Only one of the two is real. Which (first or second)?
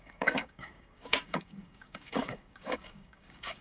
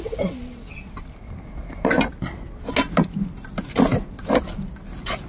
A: second